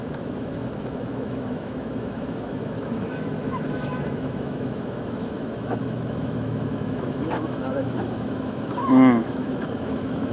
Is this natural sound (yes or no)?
no